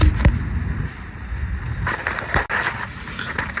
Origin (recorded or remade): recorded